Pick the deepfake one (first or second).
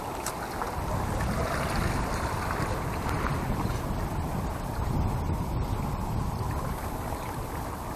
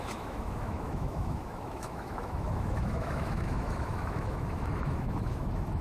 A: second